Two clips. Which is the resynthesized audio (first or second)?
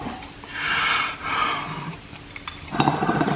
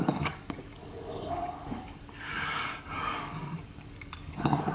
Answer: second